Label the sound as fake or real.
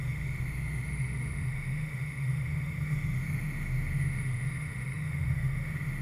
fake